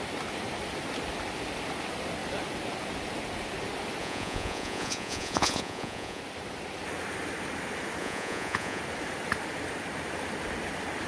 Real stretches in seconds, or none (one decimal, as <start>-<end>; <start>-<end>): 0.0-4.0; 6.2-8.0; 8.8-11.1